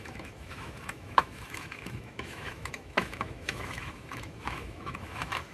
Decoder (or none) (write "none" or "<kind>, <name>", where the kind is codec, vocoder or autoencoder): autoencoder, DAC-VAE